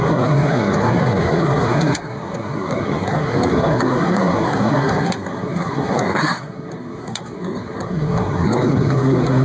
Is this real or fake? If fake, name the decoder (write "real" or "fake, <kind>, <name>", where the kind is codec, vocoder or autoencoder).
fake, codec, SNAC